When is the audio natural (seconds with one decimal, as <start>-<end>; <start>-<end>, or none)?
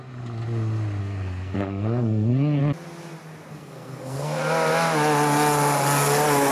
0.0-1.0; 2.6-3.5; 4.4-6.5